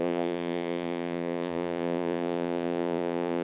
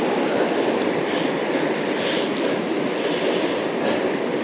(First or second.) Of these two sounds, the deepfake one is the first